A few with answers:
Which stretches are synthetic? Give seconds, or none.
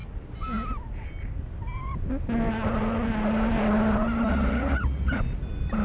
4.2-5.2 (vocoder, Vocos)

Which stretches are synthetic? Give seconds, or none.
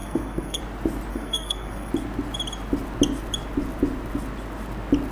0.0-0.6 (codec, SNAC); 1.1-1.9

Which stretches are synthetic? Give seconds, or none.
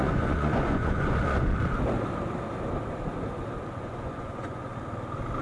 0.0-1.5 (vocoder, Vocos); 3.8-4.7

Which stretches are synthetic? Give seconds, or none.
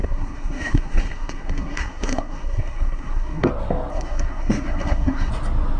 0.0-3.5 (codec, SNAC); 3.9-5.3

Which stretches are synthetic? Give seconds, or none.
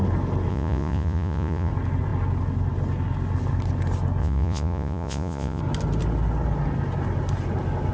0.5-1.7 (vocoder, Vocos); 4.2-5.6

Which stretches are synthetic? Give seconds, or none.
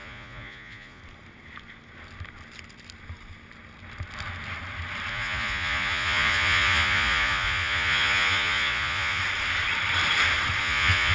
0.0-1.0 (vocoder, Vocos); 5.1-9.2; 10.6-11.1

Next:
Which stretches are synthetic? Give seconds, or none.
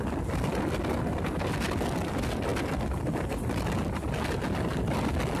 none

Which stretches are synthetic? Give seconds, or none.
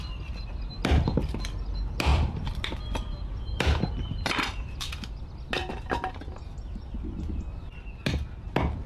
2.1-2.8 (vocoder, BigVGAN v2)